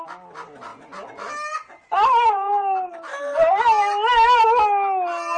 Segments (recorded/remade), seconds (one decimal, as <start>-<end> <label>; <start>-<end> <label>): 0.0-5.4 recorded